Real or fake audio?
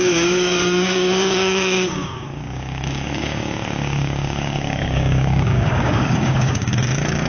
fake